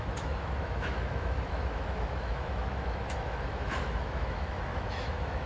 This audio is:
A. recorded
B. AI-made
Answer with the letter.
B